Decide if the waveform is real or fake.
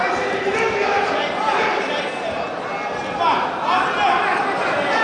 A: real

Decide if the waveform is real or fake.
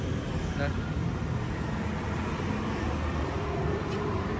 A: real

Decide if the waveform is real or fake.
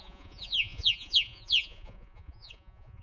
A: fake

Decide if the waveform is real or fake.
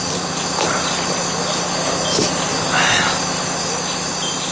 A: real